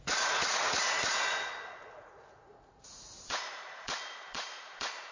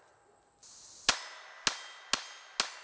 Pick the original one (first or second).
second